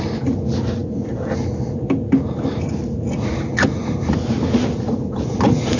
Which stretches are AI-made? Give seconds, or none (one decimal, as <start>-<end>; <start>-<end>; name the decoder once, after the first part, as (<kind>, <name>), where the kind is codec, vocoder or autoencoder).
none